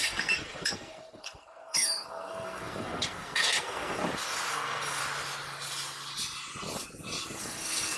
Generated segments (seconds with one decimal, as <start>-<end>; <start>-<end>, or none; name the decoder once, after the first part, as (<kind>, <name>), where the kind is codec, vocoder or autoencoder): 0.0-4.0 (codec, SNAC); 4.5-5.0; 7.4-8.0

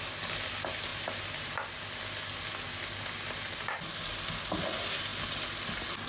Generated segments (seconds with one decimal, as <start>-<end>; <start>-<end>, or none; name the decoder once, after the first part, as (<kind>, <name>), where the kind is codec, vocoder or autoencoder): none